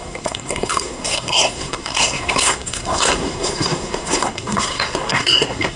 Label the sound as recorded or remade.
remade